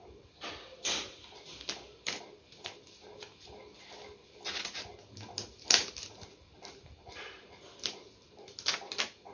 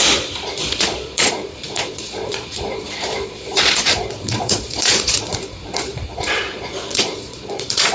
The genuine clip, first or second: first